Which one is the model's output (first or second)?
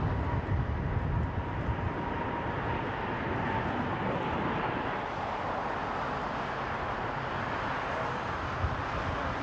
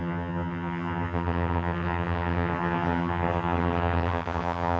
second